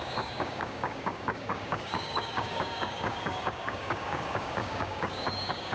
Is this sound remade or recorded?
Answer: remade